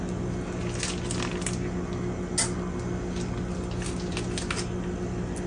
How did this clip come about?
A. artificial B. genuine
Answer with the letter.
B